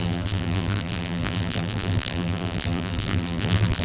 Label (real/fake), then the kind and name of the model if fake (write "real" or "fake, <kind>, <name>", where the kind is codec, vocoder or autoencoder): fake, vocoder, BigVGAN v2